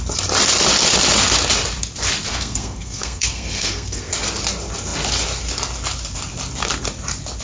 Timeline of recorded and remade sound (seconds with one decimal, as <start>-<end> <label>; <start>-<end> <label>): 0.0-2.3 recorded; 2.3-4.1 remade; 4.1-7.4 recorded